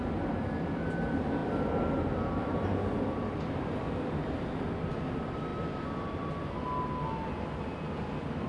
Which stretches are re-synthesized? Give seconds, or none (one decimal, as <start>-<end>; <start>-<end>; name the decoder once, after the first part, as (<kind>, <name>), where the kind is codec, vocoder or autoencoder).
none